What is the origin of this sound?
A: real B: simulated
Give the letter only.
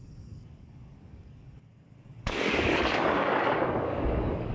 B